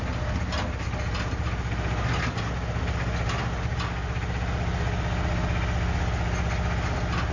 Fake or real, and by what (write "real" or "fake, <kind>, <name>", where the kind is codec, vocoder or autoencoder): real